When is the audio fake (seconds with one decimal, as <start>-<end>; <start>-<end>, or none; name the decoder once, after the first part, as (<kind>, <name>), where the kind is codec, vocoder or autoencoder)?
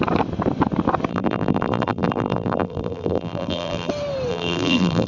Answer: 1.1-3.9 (vocoder, BigVGAN v2); 4.3-5.1